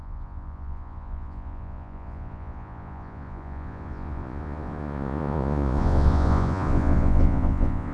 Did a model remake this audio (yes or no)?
yes